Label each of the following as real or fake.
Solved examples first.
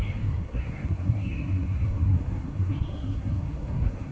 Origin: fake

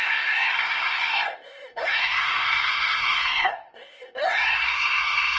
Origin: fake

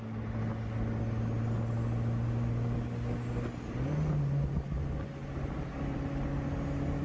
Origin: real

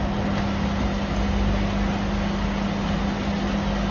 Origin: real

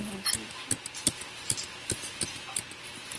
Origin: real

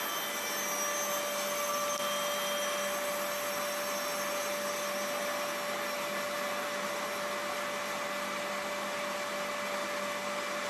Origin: real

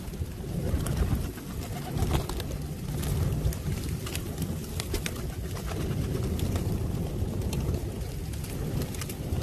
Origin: real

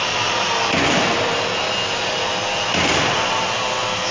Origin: real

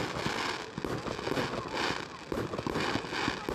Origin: real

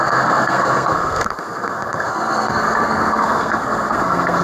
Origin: fake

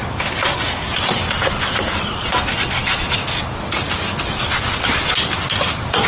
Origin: real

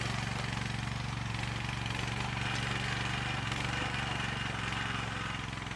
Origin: real